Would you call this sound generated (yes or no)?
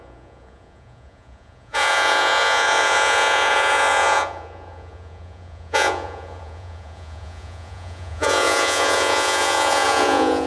yes